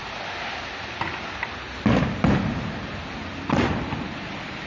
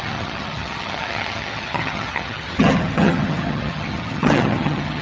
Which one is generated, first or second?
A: second